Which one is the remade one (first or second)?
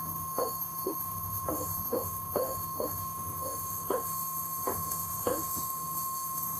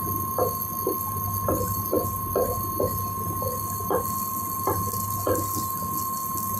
first